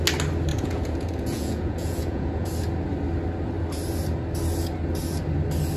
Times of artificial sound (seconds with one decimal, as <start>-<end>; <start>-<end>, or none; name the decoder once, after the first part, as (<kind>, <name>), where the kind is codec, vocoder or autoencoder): 0.5-2.5 (vocoder, Vocos)